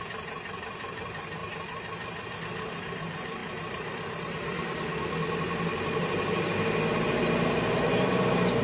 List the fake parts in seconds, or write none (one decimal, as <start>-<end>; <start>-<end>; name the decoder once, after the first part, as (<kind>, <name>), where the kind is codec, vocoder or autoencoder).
0.0-1.4 (vocoder, BigVGAN v2); 2.4-4.9; 6.9-8.6